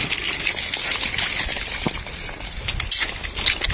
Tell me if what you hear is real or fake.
real